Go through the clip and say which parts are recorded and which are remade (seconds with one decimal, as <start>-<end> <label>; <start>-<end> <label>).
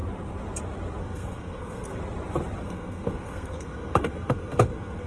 0.0-1.0 recorded; 1.0-1.9 remade; 1.9-2.6 recorded; 2.6-5.1 remade